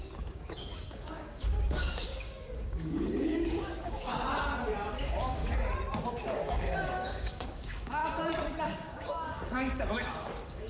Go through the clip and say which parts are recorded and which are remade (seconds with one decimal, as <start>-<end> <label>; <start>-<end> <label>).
0.0-4.1 remade; 4.1-4.9 recorded; 4.9-5.4 remade; 5.4-6.1 recorded; 6.1-8.0 remade; 8.0-8.6 recorded; 8.6-10.7 remade